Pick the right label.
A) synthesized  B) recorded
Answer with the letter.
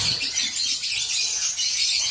B